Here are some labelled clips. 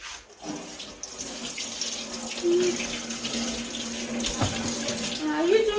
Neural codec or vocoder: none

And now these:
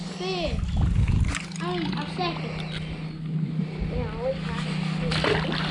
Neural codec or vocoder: none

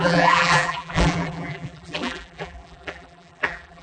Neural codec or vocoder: vocoder, BigVGAN v2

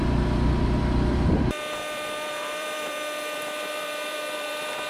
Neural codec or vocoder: vocoder, BigVGAN v2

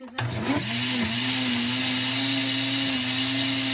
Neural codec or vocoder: none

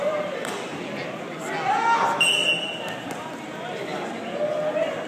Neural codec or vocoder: none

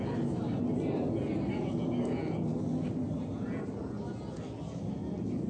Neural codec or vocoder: none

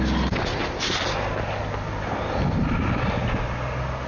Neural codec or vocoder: none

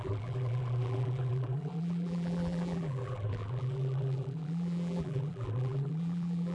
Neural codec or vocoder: vocoder, BigVGAN v2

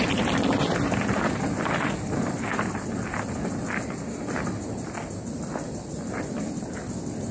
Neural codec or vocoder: none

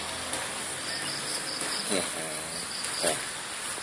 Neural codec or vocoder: none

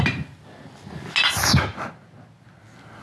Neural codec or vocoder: none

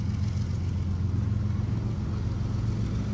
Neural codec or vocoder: none